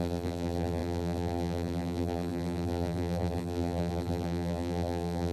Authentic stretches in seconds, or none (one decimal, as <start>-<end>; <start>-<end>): none